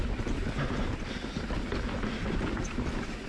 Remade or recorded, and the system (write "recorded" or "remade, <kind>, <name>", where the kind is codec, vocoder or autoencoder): recorded